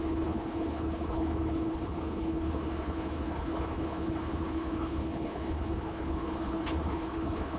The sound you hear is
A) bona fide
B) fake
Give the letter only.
B